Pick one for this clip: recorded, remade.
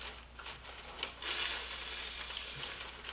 recorded